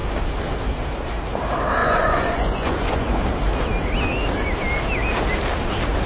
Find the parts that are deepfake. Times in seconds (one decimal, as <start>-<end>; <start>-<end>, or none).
1.8-3.2